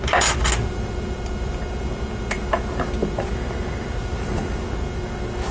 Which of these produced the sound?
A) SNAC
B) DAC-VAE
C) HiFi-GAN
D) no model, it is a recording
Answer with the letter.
D